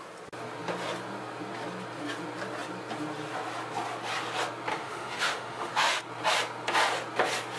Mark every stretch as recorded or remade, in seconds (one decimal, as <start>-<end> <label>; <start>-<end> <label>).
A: 0.0-4.7 recorded; 4.7-6.0 remade; 6.0-7.6 recorded

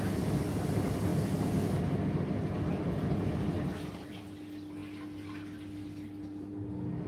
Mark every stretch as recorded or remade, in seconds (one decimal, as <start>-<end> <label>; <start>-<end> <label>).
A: 0.0-7.1 recorded

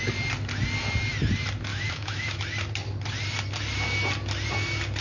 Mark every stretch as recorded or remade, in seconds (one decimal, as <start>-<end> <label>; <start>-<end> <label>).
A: 0.0-1.7 recorded; 1.7-2.4 remade; 2.4-5.0 recorded

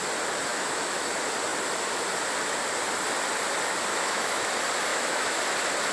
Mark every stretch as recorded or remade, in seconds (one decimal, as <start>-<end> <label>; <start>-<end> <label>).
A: 0.0-0.5 recorded; 0.5-1.1 remade; 1.1-3.9 recorded; 3.9-4.5 remade; 4.5-4.9 recorded; 4.9-5.4 remade; 5.4-5.9 recorded

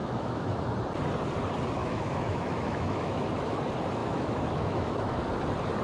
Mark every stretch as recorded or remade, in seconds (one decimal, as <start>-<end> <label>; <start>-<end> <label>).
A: 0.0-0.6 remade; 0.6-1.8 recorded; 1.8-3.6 remade; 3.6-4.0 recorded; 4.0-5.2 remade; 5.2-5.8 recorded

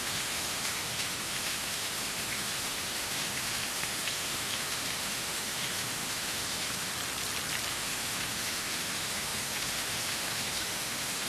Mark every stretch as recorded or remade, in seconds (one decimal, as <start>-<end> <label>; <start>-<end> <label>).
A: 0.0-6.9 remade; 6.9-7.7 recorded; 7.7-11.3 remade

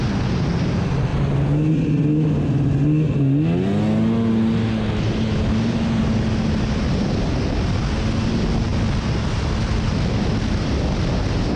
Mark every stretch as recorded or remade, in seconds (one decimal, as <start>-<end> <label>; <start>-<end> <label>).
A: 0.0-11.6 recorded

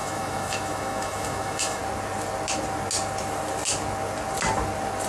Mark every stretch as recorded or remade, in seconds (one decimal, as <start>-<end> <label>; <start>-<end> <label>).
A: 0.0-1.8 remade; 1.8-5.1 recorded